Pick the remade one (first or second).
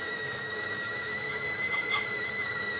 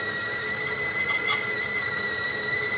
first